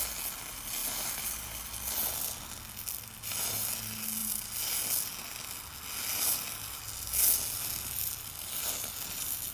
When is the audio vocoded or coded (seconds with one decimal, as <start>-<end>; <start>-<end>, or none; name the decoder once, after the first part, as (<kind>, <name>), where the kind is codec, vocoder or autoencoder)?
none